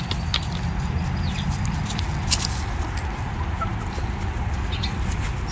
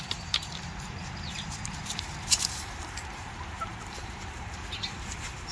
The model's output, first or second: second